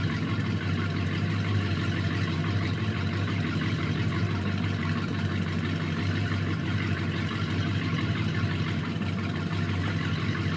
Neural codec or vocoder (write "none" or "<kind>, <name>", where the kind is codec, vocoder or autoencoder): vocoder, BigVGAN v2